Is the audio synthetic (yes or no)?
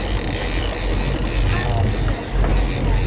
no